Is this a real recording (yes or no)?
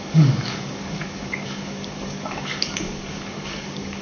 no